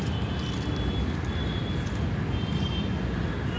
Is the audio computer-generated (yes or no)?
no